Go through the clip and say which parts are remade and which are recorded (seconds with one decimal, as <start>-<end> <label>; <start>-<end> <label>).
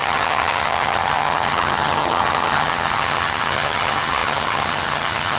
0.0-5.4 remade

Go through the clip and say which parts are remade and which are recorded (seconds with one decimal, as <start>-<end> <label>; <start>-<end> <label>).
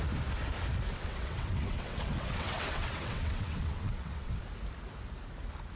0.0-0.9 recorded; 0.9-4.4 remade; 4.4-5.8 recorded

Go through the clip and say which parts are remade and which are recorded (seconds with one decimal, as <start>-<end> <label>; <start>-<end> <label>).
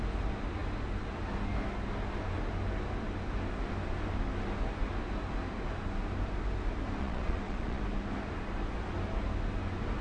0.0-7.0 recorded; 7.0-7.8 remade; 7.8-10.0 recorded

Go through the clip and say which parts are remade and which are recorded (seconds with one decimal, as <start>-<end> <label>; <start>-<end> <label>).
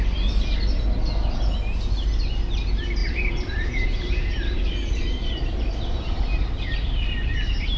0.0-3.0 recorded; 3.0-7.8 remade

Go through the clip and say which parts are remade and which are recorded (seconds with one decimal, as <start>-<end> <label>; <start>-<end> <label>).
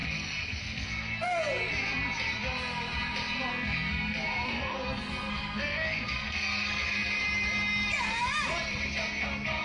0.0-1.4 remade; 1.4-3.5 recorded; 3.5-7.1 remade; 7.1-9.6 recorded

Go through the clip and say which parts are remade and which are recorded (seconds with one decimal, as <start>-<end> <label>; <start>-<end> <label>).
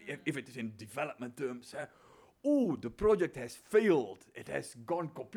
0.0-1.7 recorded; 1.7-3.2 remade; 3.2-5.4 recorded